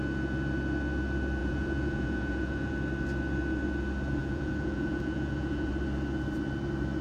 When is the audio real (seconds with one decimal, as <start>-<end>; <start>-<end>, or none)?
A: 0.0-1.4; 2.7-4.2; 5.7-7.0